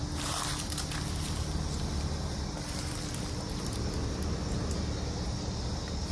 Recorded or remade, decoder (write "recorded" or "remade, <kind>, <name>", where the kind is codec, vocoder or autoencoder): recorded